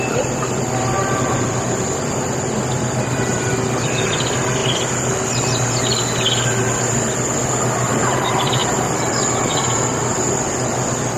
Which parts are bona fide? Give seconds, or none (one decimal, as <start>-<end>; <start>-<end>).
0.0-11.2